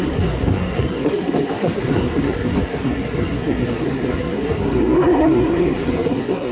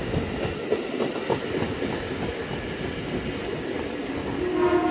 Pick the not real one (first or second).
first